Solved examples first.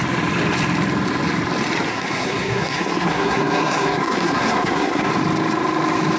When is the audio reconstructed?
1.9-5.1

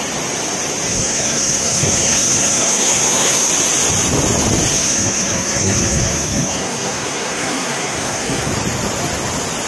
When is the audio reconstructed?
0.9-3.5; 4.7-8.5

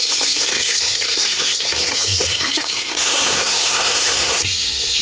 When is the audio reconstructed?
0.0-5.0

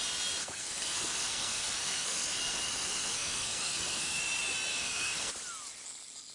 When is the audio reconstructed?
0.4-4.2; 4.7-5.3

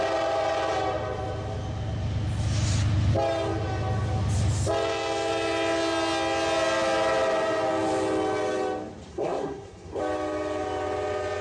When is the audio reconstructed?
9.1-10.0